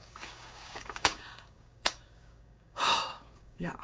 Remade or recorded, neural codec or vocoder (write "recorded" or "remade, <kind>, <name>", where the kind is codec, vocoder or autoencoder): remade, codec, DAC